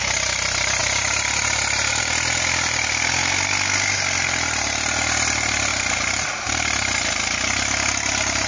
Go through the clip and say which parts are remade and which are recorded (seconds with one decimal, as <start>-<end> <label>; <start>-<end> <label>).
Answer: 0.0-8.5 recorded